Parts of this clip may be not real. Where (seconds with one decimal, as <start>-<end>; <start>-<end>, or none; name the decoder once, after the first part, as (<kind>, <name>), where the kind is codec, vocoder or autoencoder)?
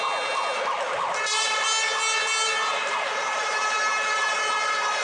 2.7-4.4 (vocoder, BigVGAN v2)